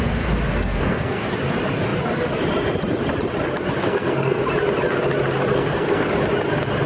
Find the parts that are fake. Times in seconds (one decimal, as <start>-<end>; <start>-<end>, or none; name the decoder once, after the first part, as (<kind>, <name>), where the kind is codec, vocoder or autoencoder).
0.5-1.3 (codec, SNAC); 3.8-4.4; 5.5-6.1